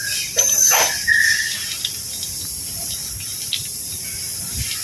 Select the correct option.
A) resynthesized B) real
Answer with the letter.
B